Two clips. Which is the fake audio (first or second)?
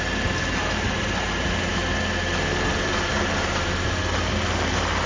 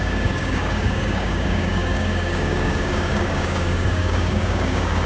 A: second